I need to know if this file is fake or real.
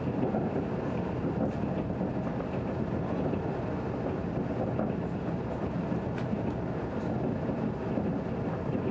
real